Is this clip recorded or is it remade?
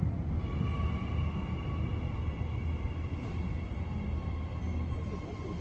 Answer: recorded